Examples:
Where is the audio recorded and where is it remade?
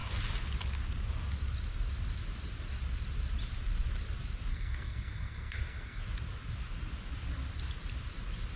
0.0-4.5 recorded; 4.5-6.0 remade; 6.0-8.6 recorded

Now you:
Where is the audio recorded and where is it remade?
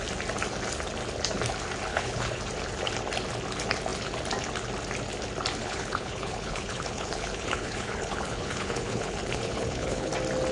0.0-1.9 recorded; 1.9-2.4 remade; 2.4-5.6 recorded; 5.6-10.1 remade; 10.1-10.5 recorded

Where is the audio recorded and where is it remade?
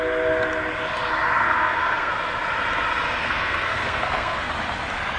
0.0-1.4 recorded; 1.4-2.1 remade; 2.1-3.2 recorded; 3.2-4.5 remade; 4.5-5.2 recorded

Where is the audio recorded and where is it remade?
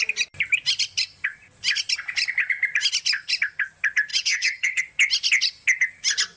0.0-4.1 recorded; 4.1-4.8 remade; 4.8-6.4 recorded